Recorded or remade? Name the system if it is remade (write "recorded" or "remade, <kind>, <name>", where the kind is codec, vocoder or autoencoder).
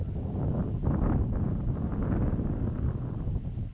recorded